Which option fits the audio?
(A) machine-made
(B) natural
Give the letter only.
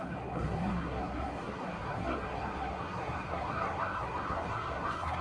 A